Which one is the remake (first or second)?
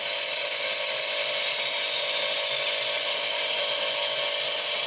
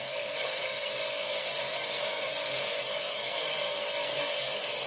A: second